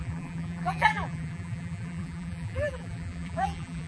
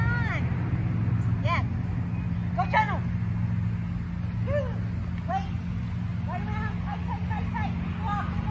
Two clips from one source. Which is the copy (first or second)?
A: first